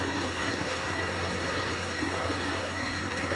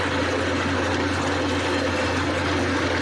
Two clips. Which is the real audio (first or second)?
second